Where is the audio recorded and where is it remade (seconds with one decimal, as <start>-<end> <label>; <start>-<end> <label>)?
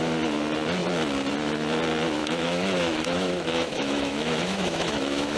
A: 0.0-2.2 recorded; 2.2-5.4 remade